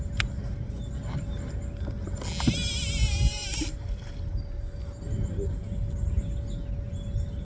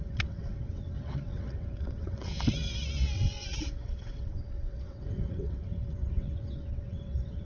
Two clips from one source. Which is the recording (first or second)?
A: first